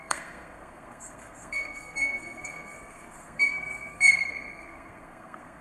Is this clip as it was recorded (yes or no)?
no